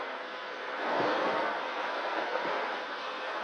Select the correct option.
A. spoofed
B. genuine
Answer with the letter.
A